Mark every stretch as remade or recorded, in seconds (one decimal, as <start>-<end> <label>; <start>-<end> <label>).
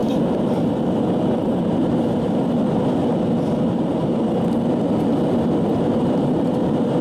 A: 0.0-0.6 remade; 0.6-1.8 recorded; 1.8-2.4 remade; 2.4-5.7 recorded; 5.7-6.5 remade; 6.5-7.0 recorded